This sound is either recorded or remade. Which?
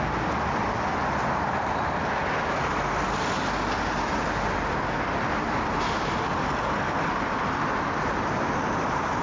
recorded